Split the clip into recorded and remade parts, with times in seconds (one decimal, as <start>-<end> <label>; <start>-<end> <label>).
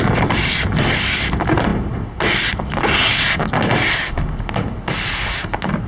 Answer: 0.0-5.9 recorded